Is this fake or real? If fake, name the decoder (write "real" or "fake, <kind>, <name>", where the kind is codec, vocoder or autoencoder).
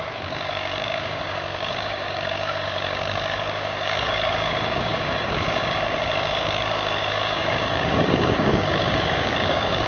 fake, codec, DAC